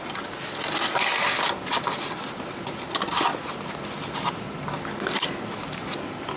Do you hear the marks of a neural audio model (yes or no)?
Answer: no